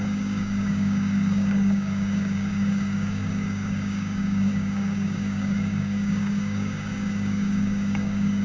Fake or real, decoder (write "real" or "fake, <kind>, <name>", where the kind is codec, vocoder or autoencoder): fake, codec, DAC